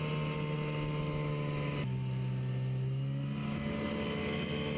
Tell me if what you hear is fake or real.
real